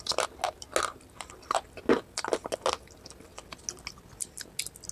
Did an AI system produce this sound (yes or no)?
no